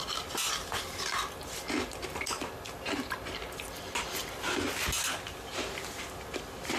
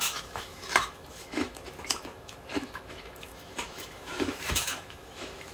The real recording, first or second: first